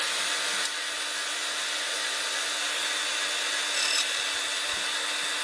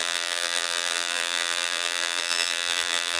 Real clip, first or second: first